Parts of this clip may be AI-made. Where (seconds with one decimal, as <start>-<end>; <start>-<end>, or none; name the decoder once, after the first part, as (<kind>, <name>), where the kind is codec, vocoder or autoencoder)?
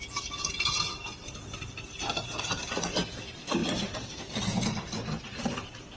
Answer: none